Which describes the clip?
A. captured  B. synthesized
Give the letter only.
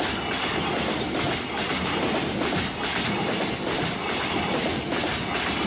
A